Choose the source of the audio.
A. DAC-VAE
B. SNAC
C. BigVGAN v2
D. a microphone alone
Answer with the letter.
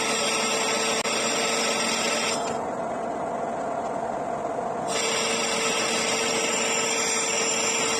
D